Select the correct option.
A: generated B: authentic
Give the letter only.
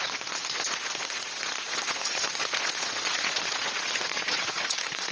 A